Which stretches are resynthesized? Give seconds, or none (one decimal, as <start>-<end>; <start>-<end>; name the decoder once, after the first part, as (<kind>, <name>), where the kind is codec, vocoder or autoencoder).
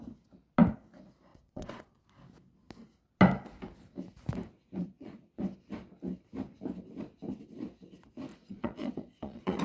1.3-2.0 (vocoder, Vocos); 4.8-5.4; 8.3-9.6